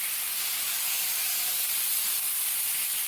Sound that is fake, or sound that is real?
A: fake